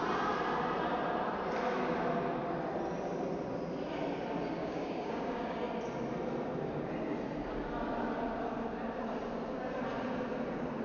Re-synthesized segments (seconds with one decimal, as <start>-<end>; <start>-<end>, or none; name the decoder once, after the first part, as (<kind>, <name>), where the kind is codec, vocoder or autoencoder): 4.6-5.6 (codec, DAC)